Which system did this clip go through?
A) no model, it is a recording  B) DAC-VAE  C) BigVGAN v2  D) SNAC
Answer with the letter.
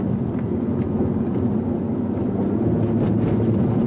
A